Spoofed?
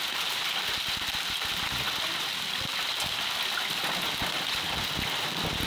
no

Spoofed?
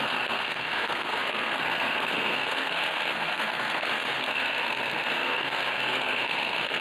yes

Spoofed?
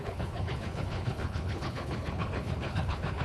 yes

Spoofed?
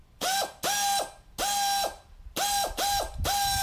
no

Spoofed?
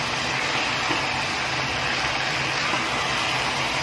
no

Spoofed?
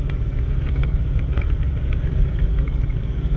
yes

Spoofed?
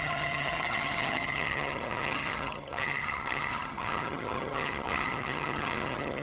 yes